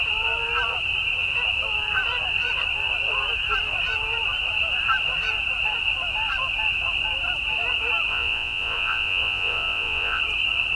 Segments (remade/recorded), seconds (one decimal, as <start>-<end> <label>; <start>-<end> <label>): 0.0-8.1 recorded; 8.1-10.2 remade; 10.2-10.8 recorded